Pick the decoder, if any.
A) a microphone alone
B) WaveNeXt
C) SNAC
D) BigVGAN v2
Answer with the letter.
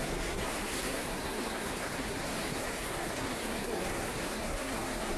C